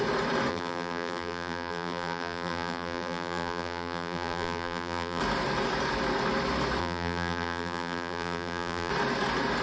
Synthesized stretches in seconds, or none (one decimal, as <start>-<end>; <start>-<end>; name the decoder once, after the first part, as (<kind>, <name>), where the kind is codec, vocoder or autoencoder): 0.5-5.2 (vocoder, BigVGAN v2); 6.8-8.9

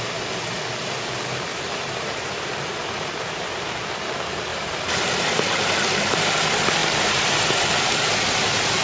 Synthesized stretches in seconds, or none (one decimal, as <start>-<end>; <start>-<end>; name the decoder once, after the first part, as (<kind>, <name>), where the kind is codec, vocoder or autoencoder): 1.5-3.5 (vocoder, BigVGAN v2); 4.5-5.2; 6.8-7.4

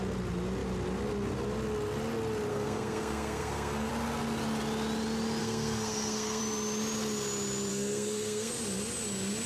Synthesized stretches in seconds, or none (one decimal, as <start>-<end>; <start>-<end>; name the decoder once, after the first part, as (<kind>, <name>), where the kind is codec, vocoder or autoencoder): 2.5-3.9 (codec, SNAC); 5.4-6.4; 7.7-8.5